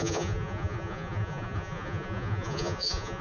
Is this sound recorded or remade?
remade